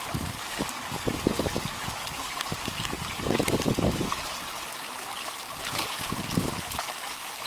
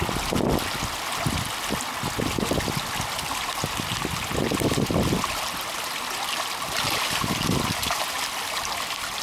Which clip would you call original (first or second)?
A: second